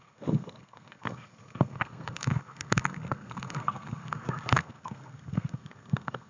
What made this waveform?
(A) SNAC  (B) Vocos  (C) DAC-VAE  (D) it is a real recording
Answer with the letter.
A